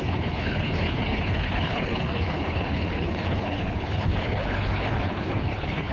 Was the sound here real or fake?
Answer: fake